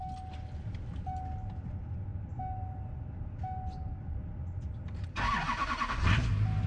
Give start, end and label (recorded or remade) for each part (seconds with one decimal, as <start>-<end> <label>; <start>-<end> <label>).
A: 0.0-6.7 recorded